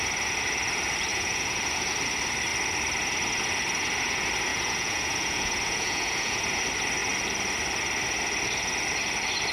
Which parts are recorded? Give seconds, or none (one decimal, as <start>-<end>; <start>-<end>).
0.0-1.1; 1.9-4.5; 6.6-9.5